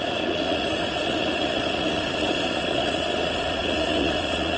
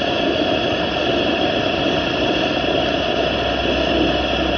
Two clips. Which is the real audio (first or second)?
second